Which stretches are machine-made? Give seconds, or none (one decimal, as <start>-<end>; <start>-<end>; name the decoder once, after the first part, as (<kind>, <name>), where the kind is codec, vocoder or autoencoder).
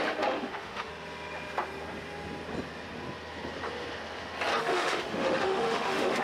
0.0-0.9 (autoencoder, DAC-VAE); 4.6-6.2